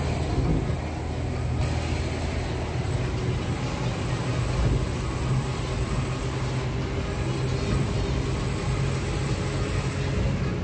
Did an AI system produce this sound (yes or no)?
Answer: no